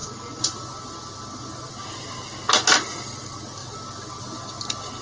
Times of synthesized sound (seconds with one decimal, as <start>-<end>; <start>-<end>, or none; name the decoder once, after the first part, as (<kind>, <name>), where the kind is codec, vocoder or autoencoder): none